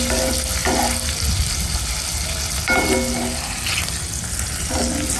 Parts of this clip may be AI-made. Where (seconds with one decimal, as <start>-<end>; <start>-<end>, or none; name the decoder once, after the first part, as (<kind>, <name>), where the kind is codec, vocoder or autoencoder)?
none